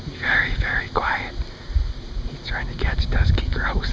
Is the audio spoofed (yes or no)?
no